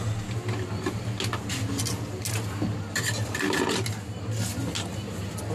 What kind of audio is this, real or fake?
real